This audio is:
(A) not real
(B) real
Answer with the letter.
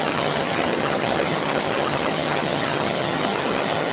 A